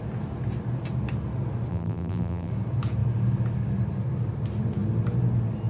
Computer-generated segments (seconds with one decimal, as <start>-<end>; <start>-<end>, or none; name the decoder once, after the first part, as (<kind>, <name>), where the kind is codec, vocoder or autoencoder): 1.7-2.5 (vocoder, BigVGAN v2)